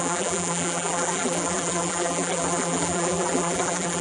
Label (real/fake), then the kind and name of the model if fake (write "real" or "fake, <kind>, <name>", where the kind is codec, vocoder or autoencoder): fake, vocoder, BigVGAN v2